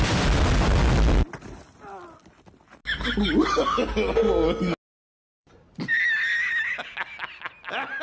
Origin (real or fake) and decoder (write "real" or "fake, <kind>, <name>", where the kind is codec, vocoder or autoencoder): real